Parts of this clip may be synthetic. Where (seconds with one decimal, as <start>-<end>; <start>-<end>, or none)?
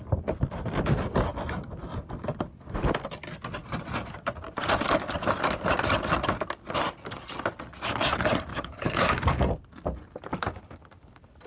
8.5-9.5